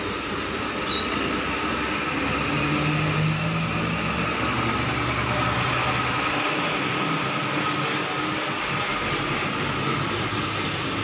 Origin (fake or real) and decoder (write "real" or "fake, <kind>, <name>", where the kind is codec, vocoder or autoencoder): real